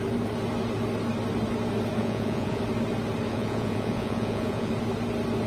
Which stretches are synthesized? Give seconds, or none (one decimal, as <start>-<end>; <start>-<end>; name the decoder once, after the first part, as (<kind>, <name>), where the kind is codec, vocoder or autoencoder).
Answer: 2.0-2.6 (vocoder, Vocos); 3.3-4.7

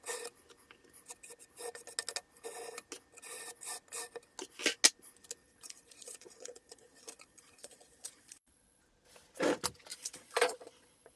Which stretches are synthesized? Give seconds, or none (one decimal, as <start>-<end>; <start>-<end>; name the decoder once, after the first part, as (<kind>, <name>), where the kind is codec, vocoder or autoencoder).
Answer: 5.4-8.8 (vocoder, Vocos); 9.9-11.2

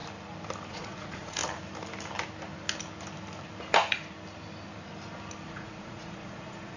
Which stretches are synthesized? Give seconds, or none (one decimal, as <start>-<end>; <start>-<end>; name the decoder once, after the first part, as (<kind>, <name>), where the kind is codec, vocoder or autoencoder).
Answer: 0.7-1.4 (vocoder, Vocos); 5.5-6.8

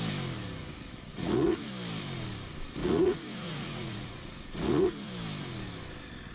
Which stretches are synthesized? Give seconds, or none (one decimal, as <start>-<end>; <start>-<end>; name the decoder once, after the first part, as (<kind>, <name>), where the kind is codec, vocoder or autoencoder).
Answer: 1.1-1.7 (vocoder, Vocos); 2.8-5.1

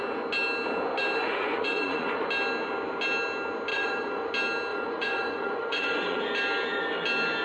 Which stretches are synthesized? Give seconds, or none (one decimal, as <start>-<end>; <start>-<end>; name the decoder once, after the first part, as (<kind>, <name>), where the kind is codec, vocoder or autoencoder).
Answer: 1.2-2.3 (vocoder, Vocos); 3.7-4.3; 4.7-6.2